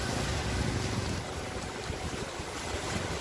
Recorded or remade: recorded